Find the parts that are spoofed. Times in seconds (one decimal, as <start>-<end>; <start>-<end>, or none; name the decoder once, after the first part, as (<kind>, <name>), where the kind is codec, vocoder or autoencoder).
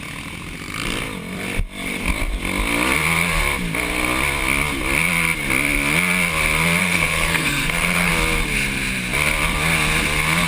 6.8-8.1 (codec, SNAC)